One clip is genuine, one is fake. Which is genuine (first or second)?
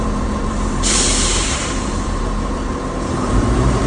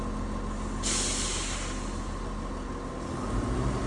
second